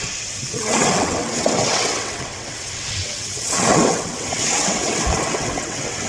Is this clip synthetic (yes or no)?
yes